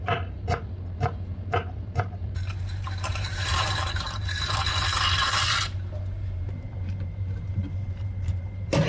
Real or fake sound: fake